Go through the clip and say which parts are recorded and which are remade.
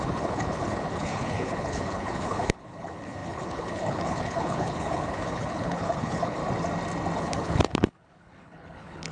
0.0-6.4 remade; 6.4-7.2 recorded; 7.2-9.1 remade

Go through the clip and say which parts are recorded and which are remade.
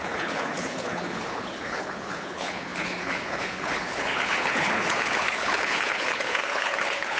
0.0-7.2 remade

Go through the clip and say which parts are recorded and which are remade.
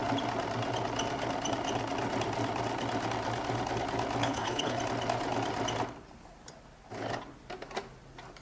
0.0-4.2 recorded; 4.2-4.8 remade; 4.8-8.4 recorded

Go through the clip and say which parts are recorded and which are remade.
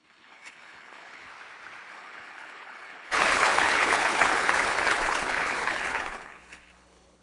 0.0-1.3 remade; 1.3-1.9 recorded; 1.9-7.2 remade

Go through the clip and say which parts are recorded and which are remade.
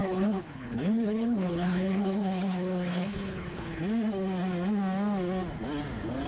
0.0-3.8 remade; 3.8-6.3 recorded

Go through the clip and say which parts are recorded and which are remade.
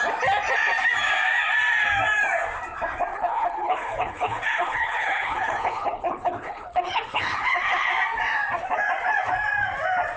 0.0-3.1 recorded; 3.1-7.9 remade; 7.9-10.2 recorded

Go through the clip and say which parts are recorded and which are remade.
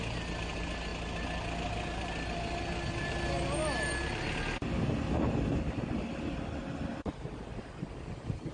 0.0-8.5 recorded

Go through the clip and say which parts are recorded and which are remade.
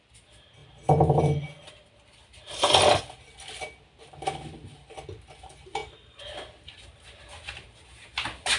0.0-8.6 recorded